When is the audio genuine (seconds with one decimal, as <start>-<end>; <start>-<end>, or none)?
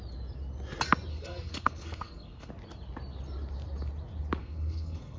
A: 0.0-1.1; 2.5-4.4